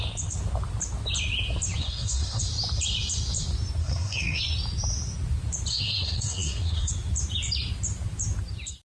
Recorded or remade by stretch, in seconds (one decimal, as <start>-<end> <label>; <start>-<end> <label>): 0.0-1.8 recorded; 1.8-2.4 remade; 2.4-3.8 recorded; 3.8-4.4 remade; 4.4-5.7 recorded; 5.7-6.9 remade; 6.9-8.9 recorded